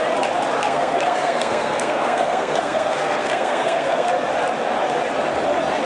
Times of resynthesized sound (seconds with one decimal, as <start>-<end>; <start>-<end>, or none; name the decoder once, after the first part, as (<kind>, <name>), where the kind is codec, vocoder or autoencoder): 0.6-4.1 (codec, SNAC)